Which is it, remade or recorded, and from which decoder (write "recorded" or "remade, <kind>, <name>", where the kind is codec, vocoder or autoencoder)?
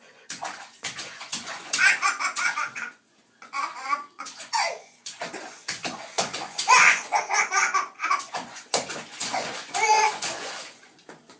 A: remade, vocoder, Vocos